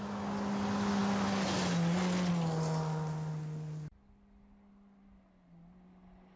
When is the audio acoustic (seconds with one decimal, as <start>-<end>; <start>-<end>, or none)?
0.0-6.4